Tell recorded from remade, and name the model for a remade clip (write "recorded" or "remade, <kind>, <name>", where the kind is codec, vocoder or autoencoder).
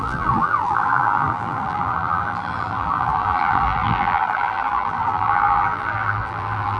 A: remade, vocoder, BigVGAN v2